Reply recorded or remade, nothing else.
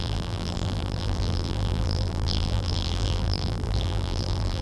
remade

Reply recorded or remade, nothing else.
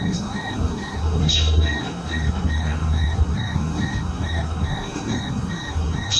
remade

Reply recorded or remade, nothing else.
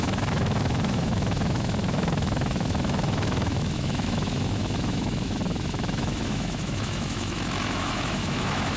remade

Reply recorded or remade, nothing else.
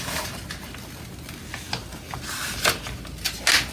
recorded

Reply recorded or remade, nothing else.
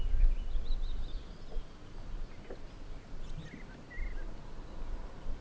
recorded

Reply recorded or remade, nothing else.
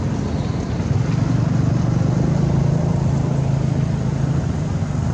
recorded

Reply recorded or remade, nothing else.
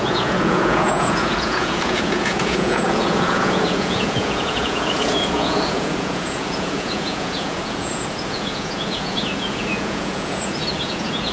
remade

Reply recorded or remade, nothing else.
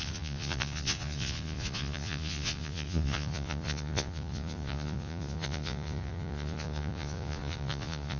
remade